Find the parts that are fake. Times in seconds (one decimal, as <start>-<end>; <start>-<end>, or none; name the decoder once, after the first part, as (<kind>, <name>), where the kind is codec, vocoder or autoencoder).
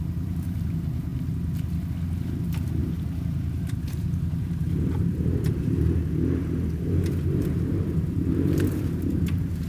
0.0-1.1 (vocoder, BigVGAN v2); 2.4-9.7